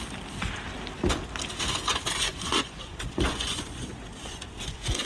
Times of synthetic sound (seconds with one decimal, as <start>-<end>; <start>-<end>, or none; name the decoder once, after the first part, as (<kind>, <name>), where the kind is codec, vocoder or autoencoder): 1.9-5.0 (vocoder, Vocos)

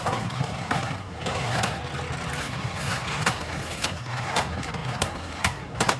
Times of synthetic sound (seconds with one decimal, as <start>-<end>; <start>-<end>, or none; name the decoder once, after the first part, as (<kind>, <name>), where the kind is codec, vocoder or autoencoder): 0.0-1.8 (codec, SNAC); 2.4-6.0

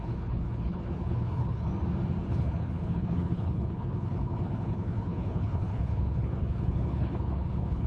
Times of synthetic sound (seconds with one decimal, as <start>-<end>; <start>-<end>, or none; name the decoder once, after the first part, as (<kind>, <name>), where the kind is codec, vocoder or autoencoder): 0.0-1.7 (codec, HILCodec); 2.3-7.9

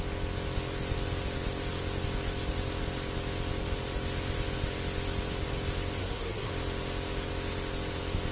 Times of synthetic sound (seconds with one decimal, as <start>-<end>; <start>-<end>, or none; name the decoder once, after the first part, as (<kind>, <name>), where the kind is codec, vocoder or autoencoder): 6.0-6.5 (codec, SNAC)